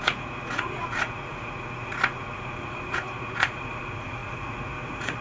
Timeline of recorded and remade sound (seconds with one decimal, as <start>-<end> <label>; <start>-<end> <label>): 0.0-5.2 remade